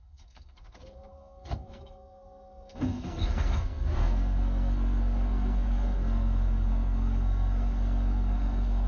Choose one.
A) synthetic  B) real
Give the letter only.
A